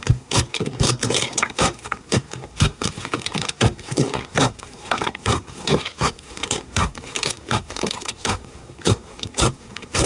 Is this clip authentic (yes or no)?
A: no